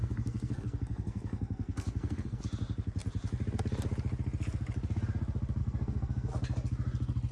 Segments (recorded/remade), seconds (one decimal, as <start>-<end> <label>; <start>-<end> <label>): 0.0-2.4 remade; 2.4-5.6 recorded; 5.6-6.3 remade; 6.3-7.3 recorded